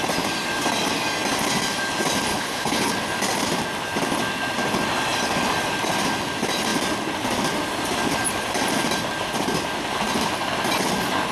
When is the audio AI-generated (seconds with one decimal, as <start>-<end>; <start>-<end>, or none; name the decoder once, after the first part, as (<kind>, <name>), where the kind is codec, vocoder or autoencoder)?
2.3-2.9 (codec, HILCodec)